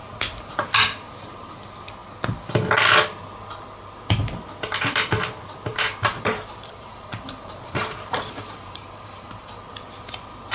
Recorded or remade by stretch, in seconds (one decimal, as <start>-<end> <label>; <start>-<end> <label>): 0.0-5.7 recorded; 5.7-9.7 remade; 9.7-10.5 recorded